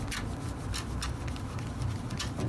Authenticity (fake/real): real